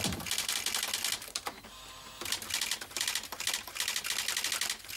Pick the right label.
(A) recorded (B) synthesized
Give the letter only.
A